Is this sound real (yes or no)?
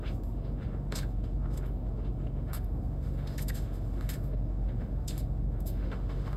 no